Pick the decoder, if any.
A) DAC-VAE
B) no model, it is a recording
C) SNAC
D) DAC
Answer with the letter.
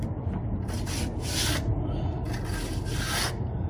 B